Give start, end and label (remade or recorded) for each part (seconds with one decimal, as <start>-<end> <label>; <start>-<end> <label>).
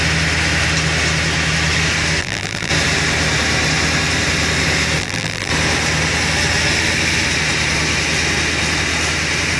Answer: 0.0-2.2 recorded; 2.2-2.7 remade; 2.7-5.0 recorded; 5.0-5.5 remade; 5.5-9.6 recorded